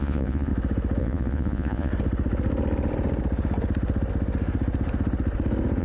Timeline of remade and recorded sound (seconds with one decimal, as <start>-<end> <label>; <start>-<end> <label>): 0.0-0.5 remade; 0.5-1.0 recorded; 1.0-1.9 remade; 1.9-5.8 recorded